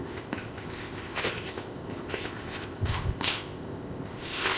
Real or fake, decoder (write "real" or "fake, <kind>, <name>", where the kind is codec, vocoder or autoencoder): fake, codec, ZipCodec